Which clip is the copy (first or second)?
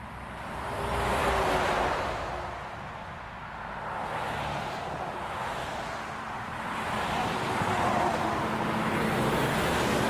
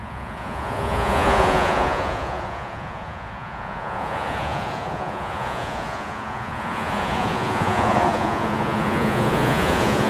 second